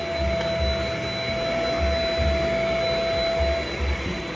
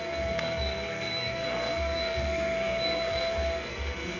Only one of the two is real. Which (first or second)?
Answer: first